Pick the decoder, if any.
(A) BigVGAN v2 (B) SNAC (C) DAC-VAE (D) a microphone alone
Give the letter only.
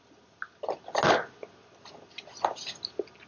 D